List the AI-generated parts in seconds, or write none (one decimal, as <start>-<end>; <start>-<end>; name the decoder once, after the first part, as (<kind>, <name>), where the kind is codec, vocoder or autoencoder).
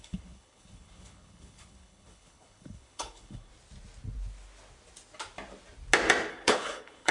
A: 0.0-3.5 (codec, HILCodec); 6.3-7.1